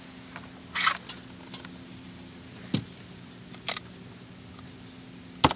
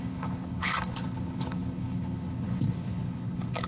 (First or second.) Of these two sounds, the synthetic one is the second